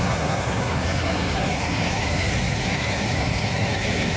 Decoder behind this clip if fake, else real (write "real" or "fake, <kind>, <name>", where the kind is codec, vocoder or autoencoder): fake, codec, SNAC